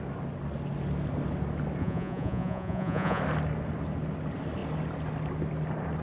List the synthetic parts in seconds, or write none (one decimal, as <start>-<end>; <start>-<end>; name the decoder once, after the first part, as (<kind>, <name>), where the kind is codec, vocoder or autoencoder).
1.8-3.2 (vocoder, Vocos)